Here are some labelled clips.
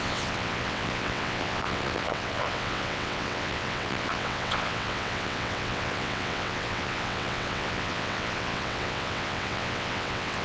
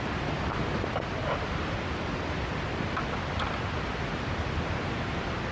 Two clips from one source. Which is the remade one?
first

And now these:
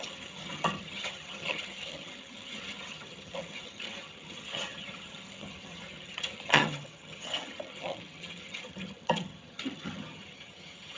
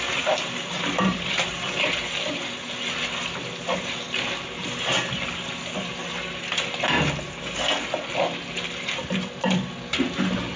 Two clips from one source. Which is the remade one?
first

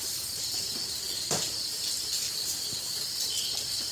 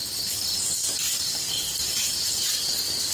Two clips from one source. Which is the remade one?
first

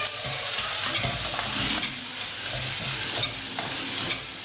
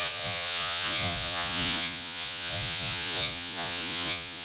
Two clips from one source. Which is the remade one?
second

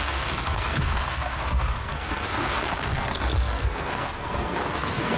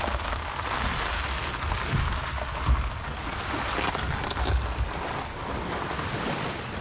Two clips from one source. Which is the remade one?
first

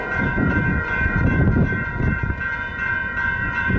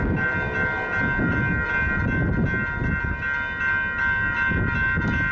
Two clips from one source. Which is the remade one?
first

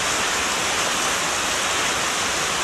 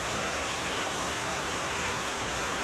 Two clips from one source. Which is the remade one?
second